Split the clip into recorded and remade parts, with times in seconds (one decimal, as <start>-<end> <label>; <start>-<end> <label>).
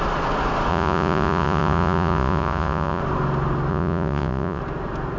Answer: 0.0-0.7 recorded; 0.7-3.0 remade; 3.0-3.7 recorded; 3.7-4.6 remade; 4.6-5.2 recorded